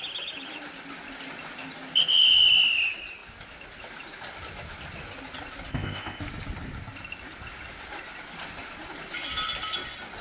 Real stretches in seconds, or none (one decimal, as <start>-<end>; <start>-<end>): 0.0-5.7; 6.2-10.2